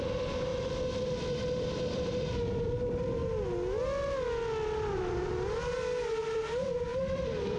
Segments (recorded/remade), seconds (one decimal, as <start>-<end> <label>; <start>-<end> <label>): 0.0-0.5 remade; 0.5-1.0 recorded; 1.0-3.2 remade; 3.2-6.3 recorded; 6.3-7.6 remade